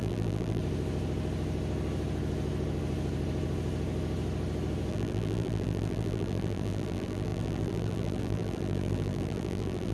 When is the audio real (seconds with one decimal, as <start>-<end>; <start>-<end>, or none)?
0.6-4.9